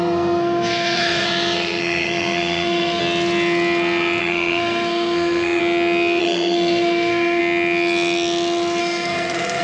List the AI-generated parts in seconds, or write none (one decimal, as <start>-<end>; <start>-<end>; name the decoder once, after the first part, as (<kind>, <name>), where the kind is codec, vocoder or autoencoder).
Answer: 0.0-3.0 (codec, SNAC); 4.2-5.6; 6.2-7.4; 8.8-9.6

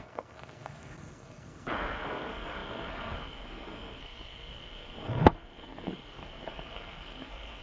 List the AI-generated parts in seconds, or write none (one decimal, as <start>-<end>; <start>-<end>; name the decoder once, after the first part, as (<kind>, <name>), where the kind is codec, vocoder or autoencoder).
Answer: 0.0-7.6 (codec, SNAC)